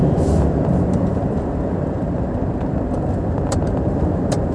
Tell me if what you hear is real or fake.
fake